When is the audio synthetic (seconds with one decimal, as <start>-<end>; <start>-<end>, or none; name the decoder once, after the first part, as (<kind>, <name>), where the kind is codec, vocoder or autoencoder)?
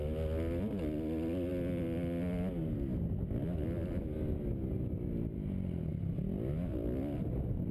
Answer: none